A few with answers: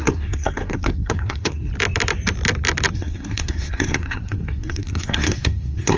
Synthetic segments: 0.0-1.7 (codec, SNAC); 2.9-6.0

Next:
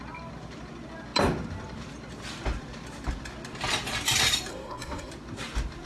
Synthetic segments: 4.5-5.1 (codec, SNAC)

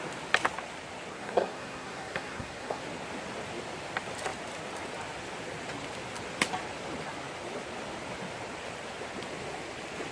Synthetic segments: 1.1-2.8 (codec, SNAC)

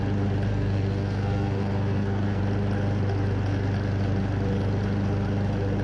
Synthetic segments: 0.5-2.4 (codec, SNAC)

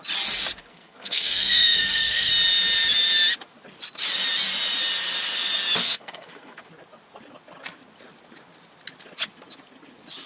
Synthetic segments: 0.6-2.3 (codec, SNAC); 5.8-6.7

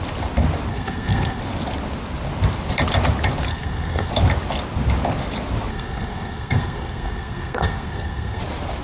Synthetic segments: 0.7-1.4 (codec, SNAC); 3.5-4.1; 5.7-8.4